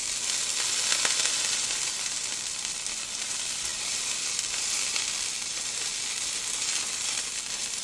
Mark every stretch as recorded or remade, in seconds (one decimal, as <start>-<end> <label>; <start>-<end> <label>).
0.0-0.9 recorded; 0.9-5.9 remade; 5.9-6.9 recorded; 6.9-7.8 remade